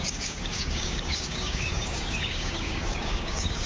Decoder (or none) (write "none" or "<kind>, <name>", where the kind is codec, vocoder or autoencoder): codec, DAC